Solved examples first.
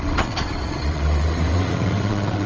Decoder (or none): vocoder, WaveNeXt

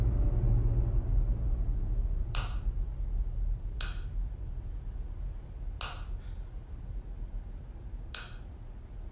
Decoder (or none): none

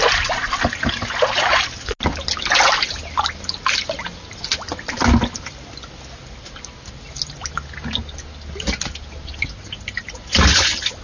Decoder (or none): none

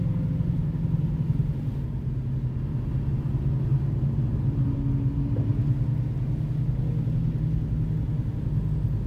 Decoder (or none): none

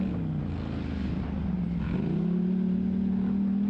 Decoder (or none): none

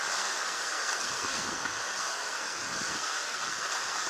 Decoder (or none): codec, SNAC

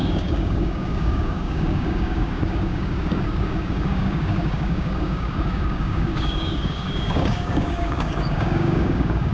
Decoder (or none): codec, DAC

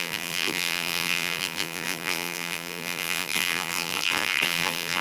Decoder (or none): vocoder, BigVGAN v2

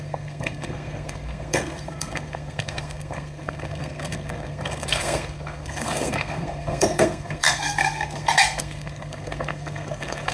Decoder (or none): codec, SNAC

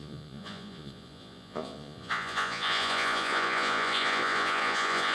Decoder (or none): vocoder, Vocos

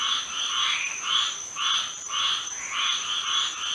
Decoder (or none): vocoder, BigVGAN v2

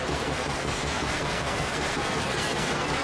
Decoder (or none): codec, SNAC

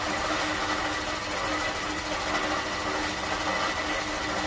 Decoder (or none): none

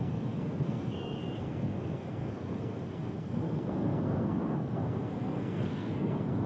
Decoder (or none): codec, SNAC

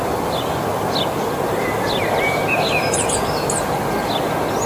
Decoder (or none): none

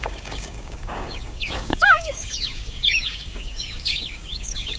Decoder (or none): codec, DAC